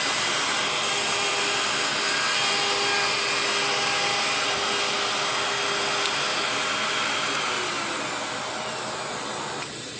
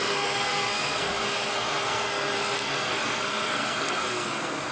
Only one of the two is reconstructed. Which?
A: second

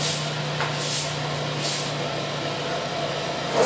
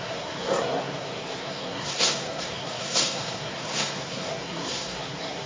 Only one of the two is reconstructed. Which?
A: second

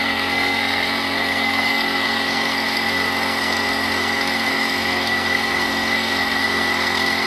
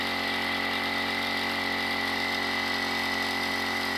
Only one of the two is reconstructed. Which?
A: first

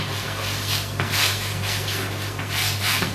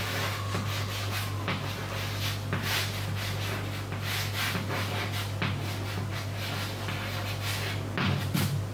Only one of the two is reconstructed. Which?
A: first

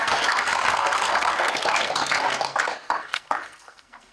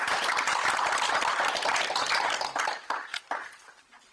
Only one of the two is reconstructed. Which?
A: first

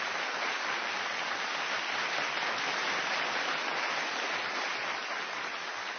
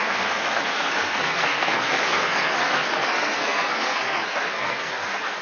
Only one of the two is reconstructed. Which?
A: second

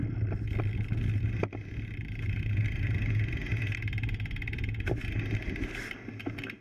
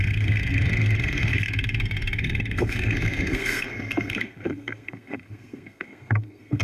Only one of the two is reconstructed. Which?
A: second